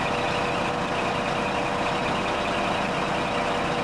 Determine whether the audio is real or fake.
real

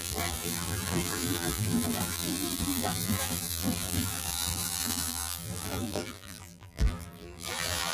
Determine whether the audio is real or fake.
fake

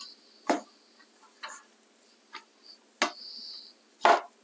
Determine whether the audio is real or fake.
real